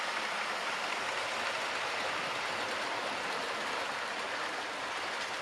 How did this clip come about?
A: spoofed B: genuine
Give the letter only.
B